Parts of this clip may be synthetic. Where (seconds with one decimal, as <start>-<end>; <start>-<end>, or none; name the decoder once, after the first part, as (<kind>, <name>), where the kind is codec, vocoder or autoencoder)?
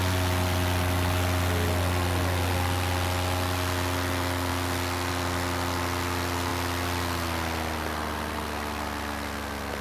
none